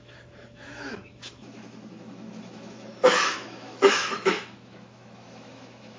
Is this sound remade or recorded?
remade